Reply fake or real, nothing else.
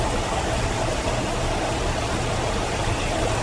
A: real